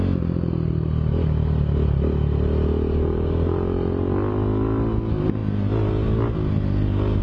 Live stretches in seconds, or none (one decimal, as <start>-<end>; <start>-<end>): 0.0-7.2